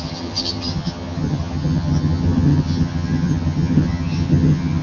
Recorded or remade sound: remade